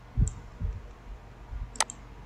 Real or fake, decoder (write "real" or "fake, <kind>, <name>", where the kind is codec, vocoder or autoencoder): real